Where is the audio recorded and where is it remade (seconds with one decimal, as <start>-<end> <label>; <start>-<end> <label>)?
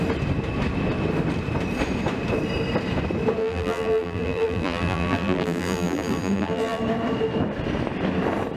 0.0-3.4 recorded; 3.4-6.8 remade; 6.8-8.6 recorded